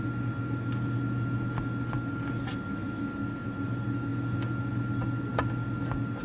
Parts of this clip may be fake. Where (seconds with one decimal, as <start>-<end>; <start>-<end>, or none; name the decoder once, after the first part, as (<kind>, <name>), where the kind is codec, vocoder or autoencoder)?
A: none